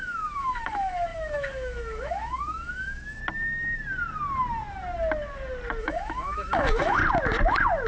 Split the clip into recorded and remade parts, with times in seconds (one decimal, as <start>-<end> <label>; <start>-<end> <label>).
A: 0.0-3.2 remade; 3.2-5.8 recorded; 5.8-7.0 remade; 7.0-7.9 recorded